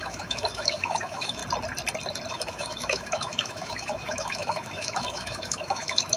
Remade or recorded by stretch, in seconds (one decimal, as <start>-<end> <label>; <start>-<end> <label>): 0.0-1.4 remade; 1.4-2.3 recorded; 2.3-6.2 remade